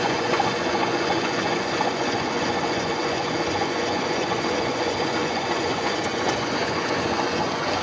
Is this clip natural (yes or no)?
no